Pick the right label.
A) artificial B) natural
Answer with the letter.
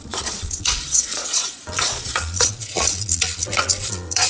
A